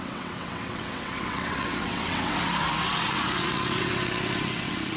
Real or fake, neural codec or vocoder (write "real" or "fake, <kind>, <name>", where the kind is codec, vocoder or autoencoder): fake, vocoder, WaveNeXt